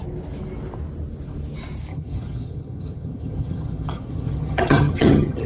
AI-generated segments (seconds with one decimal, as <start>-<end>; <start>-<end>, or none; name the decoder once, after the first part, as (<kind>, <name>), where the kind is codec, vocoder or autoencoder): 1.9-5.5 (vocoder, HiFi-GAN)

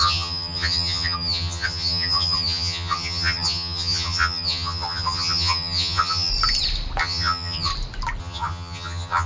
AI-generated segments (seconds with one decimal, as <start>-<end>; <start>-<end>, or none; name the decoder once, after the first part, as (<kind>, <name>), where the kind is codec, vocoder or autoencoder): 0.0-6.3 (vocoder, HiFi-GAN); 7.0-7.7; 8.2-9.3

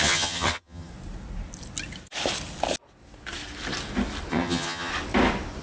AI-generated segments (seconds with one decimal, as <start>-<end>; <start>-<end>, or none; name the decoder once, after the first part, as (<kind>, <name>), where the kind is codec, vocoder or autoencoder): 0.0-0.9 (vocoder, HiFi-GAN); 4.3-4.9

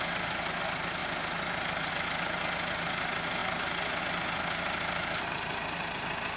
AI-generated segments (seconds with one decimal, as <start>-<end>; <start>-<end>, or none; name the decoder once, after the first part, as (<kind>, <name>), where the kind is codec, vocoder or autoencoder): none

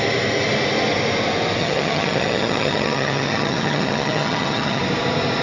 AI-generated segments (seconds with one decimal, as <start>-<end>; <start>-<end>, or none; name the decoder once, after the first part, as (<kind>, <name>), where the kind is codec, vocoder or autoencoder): 1.6-4.8 (vocoder, HiFi-GAN)